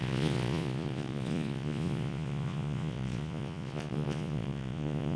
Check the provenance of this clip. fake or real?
fake